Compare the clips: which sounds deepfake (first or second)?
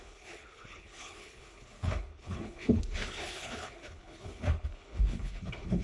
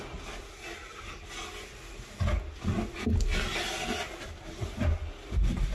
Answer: first